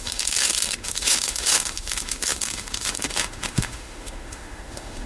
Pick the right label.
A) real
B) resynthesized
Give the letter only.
B